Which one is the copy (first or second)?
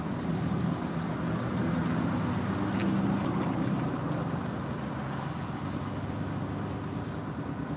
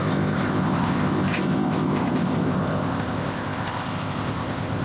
second